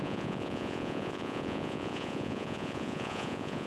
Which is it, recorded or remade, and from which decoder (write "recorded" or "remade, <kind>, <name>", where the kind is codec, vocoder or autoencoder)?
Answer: remade, vocoder, Vocos